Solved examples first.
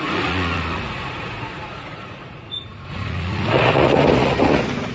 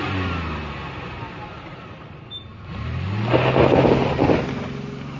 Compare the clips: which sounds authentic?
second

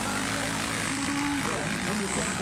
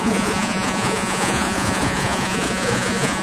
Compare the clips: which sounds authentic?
first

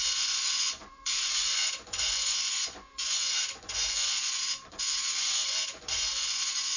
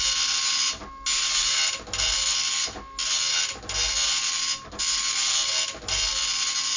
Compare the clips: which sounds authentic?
second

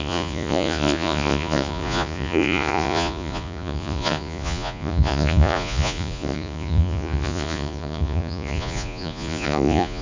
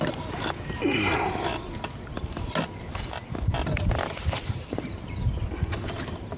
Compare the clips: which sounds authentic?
second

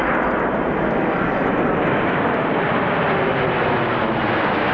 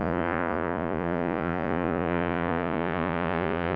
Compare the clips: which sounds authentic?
first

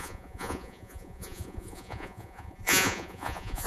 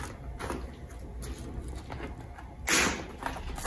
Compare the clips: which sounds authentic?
second